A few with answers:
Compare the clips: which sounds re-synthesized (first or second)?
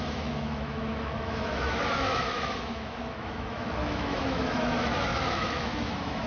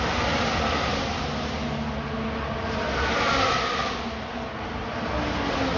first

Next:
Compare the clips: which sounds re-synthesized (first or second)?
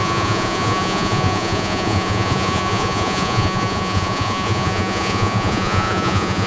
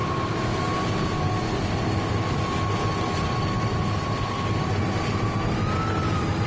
first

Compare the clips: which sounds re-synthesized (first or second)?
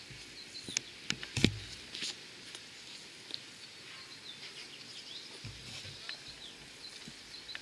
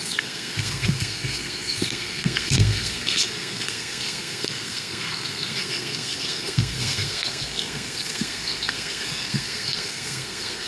second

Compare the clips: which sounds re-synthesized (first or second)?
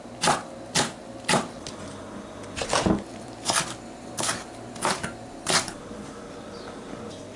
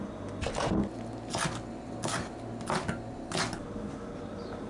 first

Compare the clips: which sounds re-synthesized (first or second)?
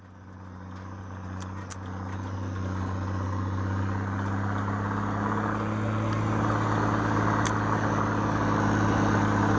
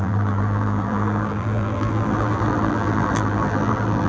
second